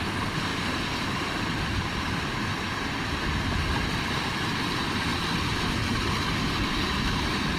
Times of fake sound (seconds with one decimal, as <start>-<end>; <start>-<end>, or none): 0.0-7.6